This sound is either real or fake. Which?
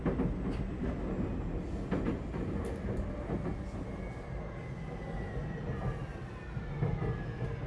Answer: real